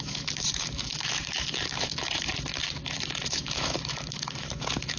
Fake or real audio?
fake